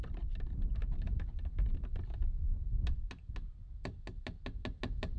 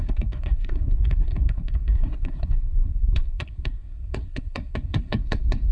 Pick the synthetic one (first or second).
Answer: second